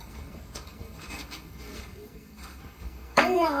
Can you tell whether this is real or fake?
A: fake